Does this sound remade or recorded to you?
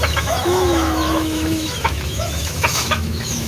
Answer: remade